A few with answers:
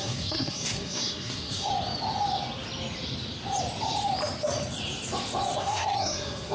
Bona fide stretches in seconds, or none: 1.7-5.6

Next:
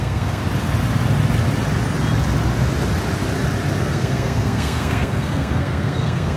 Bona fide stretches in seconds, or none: 0.4-3.8

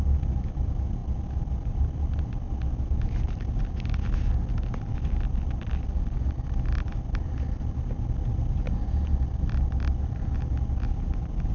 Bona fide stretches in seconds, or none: 0.0-11.5

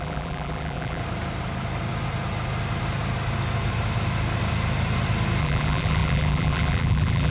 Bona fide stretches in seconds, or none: 1.0-5.4

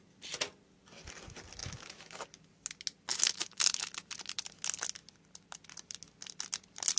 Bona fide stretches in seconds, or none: 0.0-1.6; 2.2-3.1; 3.9-7.0

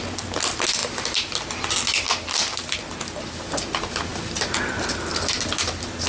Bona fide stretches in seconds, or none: 0.0-6.1